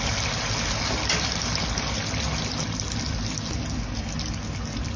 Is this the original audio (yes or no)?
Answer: yes